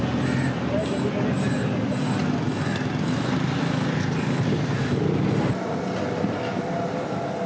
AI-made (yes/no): no